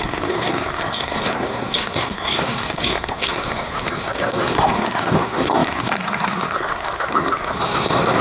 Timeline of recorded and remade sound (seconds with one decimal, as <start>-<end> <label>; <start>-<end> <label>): 0.0-8.2 remade

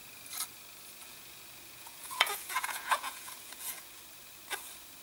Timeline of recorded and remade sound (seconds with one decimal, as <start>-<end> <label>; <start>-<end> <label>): 0.0-1.0 recorded; 1.0-4.0 remade; 4.0-5.0 recorded

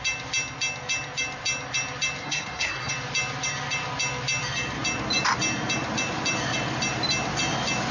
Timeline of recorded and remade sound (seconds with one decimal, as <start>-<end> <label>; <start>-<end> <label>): 0.0-2.2 recorded; 2.2-2.9 remade; 2.9-7.9 recorded

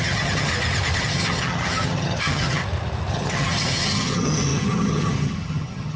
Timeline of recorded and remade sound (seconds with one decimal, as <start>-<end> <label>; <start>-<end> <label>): 0.0-0.5 remade; 0.5-1.0 recorded; 1.0-2.6 remade; 2.6-3.1 recorded; 3.1-6.0 remade

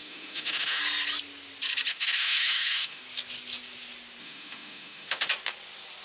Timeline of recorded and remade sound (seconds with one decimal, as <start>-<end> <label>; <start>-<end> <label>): 0.0-0.8 remade; 0.8-1.9 recorded; 1.9-3.0 remade; 3.0-4.2 recorded; 4.2-5.3 remade; 5.3-6.0 recorded

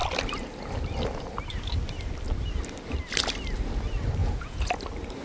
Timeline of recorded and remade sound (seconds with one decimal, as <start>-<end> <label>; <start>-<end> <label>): 0.0-4.2 recorded; 4.2-4.7 remade; 4.7-5.2 recorded